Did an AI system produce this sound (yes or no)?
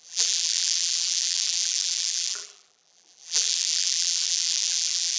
yes